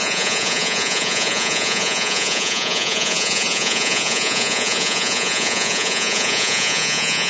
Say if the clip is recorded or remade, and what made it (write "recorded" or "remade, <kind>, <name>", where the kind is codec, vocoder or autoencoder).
remade, vocoder, Vocos